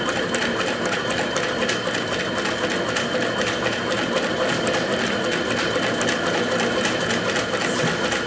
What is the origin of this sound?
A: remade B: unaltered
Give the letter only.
B